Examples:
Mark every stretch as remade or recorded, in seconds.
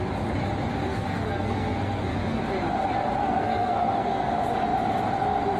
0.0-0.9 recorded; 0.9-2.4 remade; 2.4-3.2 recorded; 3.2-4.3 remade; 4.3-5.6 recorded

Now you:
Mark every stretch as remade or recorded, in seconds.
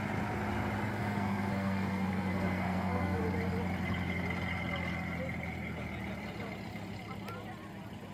0.0-1.0 recorded; 1.0-3.2 remade; 3.2-8.1 recorded